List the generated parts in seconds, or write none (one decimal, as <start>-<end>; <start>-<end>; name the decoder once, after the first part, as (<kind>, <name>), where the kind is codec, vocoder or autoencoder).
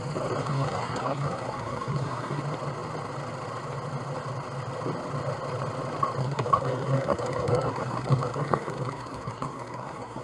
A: 0.4-2.4 (codec, SNAC); 6.2-10.2